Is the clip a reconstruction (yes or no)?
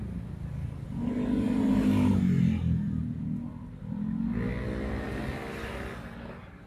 no